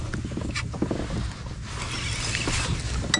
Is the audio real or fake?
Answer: real